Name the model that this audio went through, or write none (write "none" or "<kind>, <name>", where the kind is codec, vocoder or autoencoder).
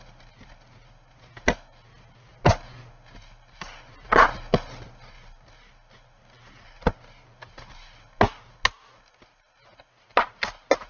none